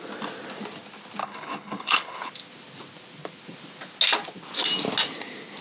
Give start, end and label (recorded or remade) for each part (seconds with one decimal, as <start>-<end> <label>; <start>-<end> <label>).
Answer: 0.0-1.2 recorded; 1.2-2.3 remade; 2.3-5.6 recorded